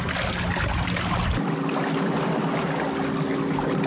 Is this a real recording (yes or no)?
yes